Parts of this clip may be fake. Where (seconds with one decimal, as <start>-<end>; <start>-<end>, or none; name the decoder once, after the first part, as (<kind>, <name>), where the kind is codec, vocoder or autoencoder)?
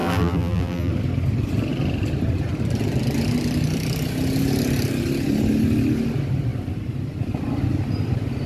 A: 0.0-0.9 (vocoder, BigVGAN v2)